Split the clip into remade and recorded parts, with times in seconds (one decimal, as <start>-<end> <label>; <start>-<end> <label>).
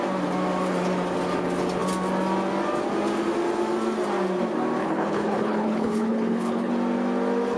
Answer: 0.0-4.8 recorded; 4.8-6.7 remade; 6.7-7.6 recorded